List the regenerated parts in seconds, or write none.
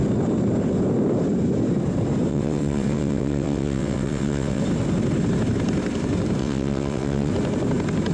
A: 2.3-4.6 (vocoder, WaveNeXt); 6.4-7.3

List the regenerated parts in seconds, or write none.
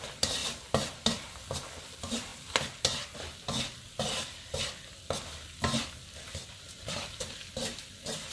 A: 0.0-0.4 (vocoder, BigVGAN v2); 1.8-2.3; 6.7-8.3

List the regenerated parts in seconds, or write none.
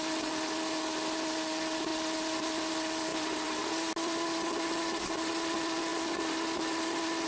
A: 3.1-3.7 (vocoder, BigVGAN v2)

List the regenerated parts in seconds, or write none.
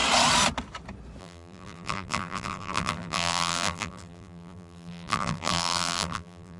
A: 1.2-6.6 (vocoder, BigVGAN v2)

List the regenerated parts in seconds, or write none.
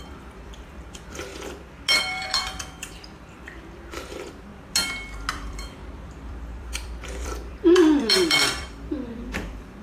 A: 0.0-1.3 (vocoder, BigVGAN v2); 2.0-4.5; 5.3-9.8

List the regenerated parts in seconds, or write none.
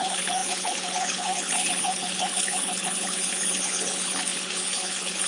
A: 0.0-5.3 (codec, HILCodec)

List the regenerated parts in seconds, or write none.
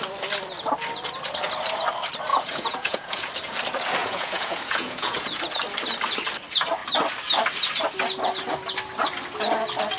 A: 2.3-3.3 (vocoder, Vocos); 4.0-5.4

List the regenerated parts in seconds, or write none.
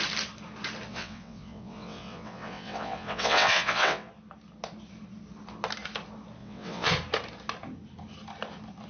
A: 0.9-4.1 (vocoder, WaveNeXt); 6.4-6.9